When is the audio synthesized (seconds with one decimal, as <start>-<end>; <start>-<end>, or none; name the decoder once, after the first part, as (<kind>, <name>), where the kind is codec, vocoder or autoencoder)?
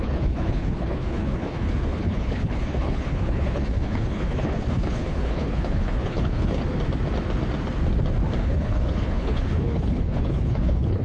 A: 0.0-6.6 (codec, HILCodec); 8.4-11.0